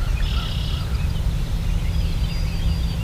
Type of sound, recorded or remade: recorded